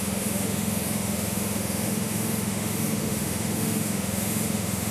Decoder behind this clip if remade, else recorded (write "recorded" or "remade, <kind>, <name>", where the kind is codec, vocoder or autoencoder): remade, autoencoder, DAC-VAE